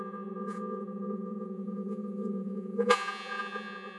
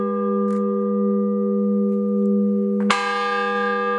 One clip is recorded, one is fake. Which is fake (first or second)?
first